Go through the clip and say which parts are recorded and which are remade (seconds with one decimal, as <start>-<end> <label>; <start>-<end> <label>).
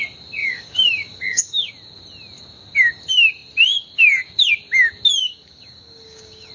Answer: 0.0-0.4 recorded; 0.4-1.7 remade; 1.7-5.2 recorded; 5.2-6.5 remade